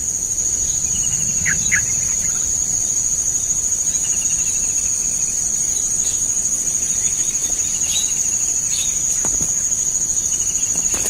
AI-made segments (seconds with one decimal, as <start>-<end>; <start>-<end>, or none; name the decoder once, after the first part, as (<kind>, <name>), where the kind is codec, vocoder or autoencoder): none